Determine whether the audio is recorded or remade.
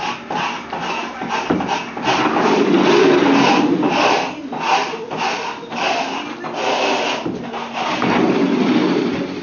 recorded